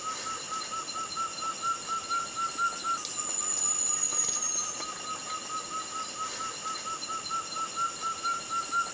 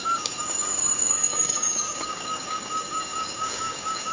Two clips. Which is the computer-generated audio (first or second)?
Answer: second